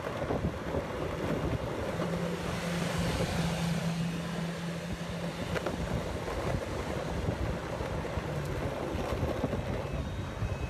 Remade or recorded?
recorded